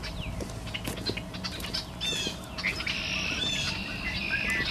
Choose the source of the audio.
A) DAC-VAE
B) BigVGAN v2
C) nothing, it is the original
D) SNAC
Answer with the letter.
C